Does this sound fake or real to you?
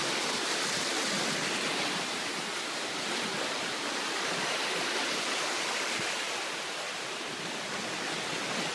fake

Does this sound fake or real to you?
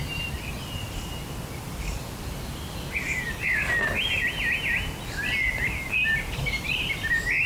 real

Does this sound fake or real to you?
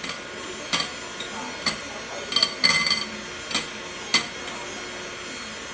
real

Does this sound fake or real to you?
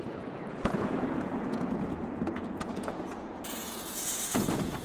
fake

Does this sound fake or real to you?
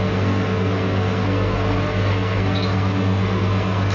fake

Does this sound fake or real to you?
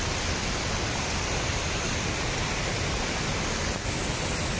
real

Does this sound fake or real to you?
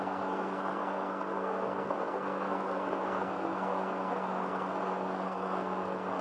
fake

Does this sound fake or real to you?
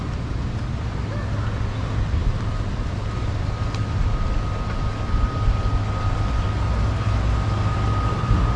real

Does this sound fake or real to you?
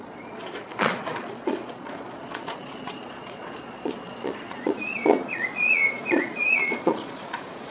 fake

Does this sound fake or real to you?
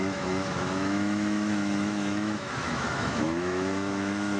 fake